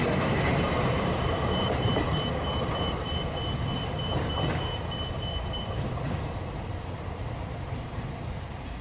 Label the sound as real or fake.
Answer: fake